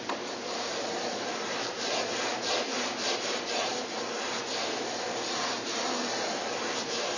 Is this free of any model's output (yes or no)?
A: no